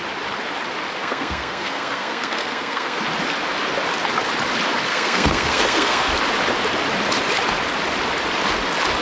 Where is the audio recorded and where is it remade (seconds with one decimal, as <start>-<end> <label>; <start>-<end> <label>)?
0.0-1.0 recorded; 1.0-3.0 remade; 3.0-4.9 recorded; 4.9-6.1 remade; 6.1-9.0 recorded

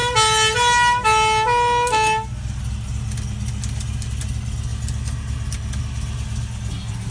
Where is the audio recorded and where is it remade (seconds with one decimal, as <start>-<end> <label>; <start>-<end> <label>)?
0.0-7.1 recorded

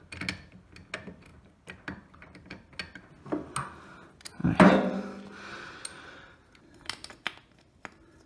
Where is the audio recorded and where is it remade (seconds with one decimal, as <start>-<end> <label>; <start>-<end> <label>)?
0.0-1.3 recorded; 1.3-2.7 remade; 2.7-4.4 recorded; 4.4-5.6 remade; 5.6-8.3 recorded